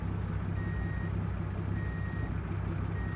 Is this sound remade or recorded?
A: recorded